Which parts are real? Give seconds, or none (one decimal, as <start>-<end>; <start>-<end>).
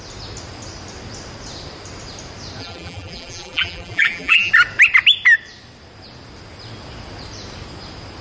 0.0-2.6; 4.5-8.2